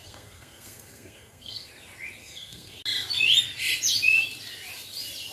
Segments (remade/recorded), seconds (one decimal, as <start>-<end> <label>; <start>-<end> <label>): 0.0-1.7 remade; 1.7-2.2 recorded; 2.2-2.8 remade; 2.8-5.3 recorded

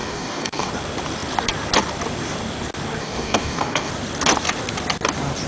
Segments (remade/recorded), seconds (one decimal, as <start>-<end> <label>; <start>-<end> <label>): 0.0-0.7 remade; 0.7-3.0 recorded; 3.0-3.9 remade; 3.9-5.5 recorded

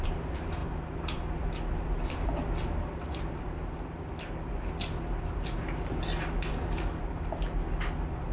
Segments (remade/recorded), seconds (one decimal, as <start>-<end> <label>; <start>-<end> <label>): 0.0-6.5 recorded; 6.5-7.0 remade; 7.0-8.3 recorded

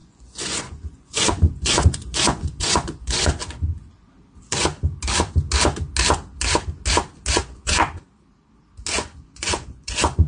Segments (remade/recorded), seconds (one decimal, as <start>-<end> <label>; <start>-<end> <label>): 0.0-3.4 remade; 3.4-7.3 recorded; 7.3-7.8 remade; 7.8-8.9 recorded; 8.9-10.3 remade

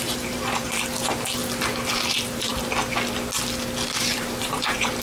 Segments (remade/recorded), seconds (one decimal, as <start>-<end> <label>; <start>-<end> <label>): 0.0-1.4 remade; 1.4-2.1 recorded; 2.1-2.5 remade; 2.5-4.0 recorded; 4.0-5.0 remade

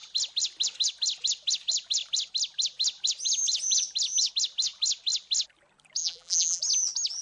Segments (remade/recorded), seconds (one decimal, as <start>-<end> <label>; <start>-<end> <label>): 0.0-6.0 recorded; 6.0-6.6 remade; 6.6-7.2 recorded

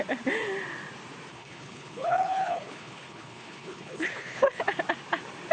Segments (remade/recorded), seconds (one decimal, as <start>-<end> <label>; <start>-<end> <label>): 0.0-1.3 recorded; 1.3-4.6 remade; 4.6-5.5 recorded